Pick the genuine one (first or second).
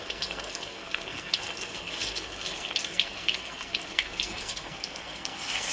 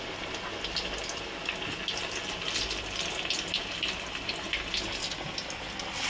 second